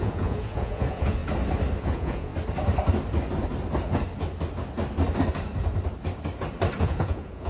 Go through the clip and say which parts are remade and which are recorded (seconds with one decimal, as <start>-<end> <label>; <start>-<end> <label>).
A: 0.0-1.2 remade; 1.2-1.8 recorded; 1.8-2.3 remade; 2.3-6.8 recorded; 6.8-7.5 remade